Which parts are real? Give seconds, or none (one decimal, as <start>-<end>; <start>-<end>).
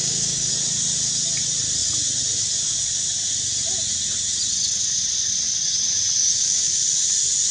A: 0.5-6.2; 6.8-7.5